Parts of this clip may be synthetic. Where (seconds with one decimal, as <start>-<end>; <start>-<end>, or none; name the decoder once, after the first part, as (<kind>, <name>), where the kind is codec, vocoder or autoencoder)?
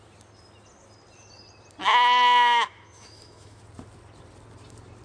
1.9-3.6 (autoencoder, DAC-VAE)